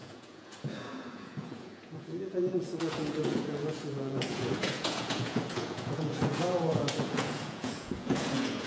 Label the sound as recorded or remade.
remade